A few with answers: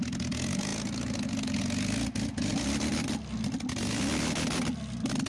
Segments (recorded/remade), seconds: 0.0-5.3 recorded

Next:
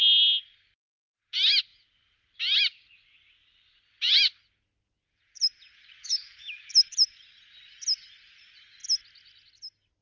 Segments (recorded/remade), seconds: 0.0-6.0 recorded; 6.0-6.7 remade; 6.7-10.0 recorded

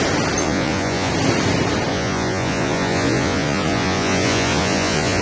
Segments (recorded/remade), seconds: 0.0-0.4 recorded; 0.4-1.1 remade; 1.1-1.9 recorded; 1.9-5.2 remade

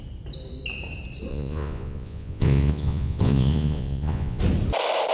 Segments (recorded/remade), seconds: 0.0-1.3 recorded; 1.3-4.4 remade; 4.4-5.1 recorded

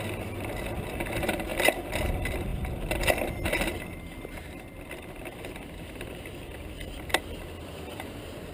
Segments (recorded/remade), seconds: 0.0-1.5 remade; 1.5-2.0 recorded; 2.0-2.5 remade; 2.5-6.1 recorded; 6.1-8.5 remade

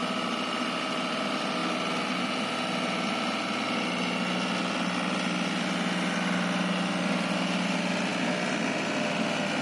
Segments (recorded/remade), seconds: 0.0-9.6 recorded

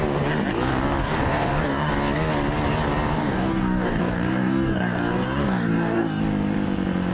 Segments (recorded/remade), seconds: 0.0-1.0 recorded; 1.0-1.9 remade; 1.9-3.2 recorded; 3.2-6.2 remade; 6.2-7.1 recorded

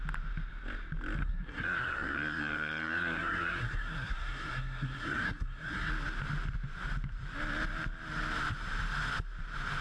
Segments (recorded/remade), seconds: 0.0-1.2 recorded; 1.2-5.9 remade; 5.9-9.8 recorded